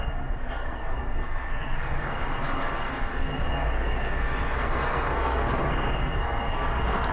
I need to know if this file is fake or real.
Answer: fake